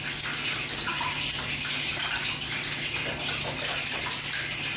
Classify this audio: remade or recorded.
recorded